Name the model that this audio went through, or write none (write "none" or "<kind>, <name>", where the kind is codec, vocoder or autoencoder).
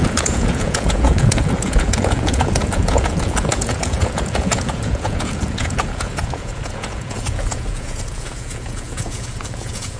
vocoder, Vocos